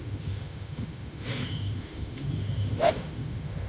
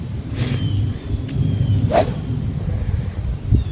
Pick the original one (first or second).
second